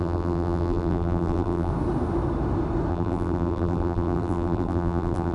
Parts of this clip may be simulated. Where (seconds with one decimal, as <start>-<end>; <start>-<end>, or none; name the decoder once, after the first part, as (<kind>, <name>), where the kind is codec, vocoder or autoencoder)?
0.0-1.7 (vocoder, BigVGAN v2); 2.9-5.3